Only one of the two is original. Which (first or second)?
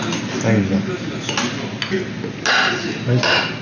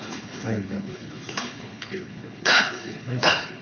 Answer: first